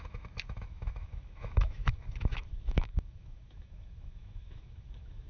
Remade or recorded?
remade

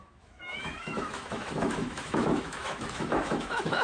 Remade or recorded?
remade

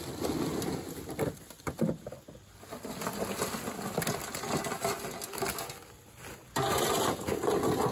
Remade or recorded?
recorded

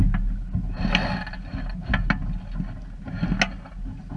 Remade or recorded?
recorded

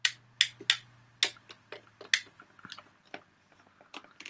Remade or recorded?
recorded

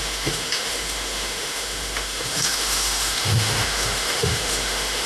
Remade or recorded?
remade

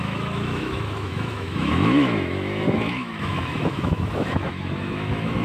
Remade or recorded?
remade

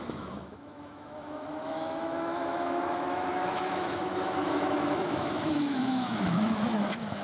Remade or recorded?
remade